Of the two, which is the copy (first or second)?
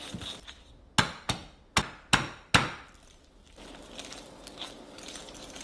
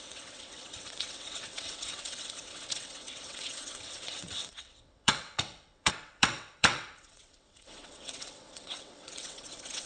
second